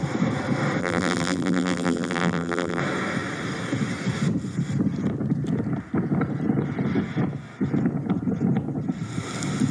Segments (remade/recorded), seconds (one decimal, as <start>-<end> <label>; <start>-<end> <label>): 0.0-0.8 recorded; 0.8-2.8 remade; 2.8-9.7 recorded